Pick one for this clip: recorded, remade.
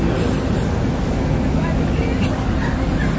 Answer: recorded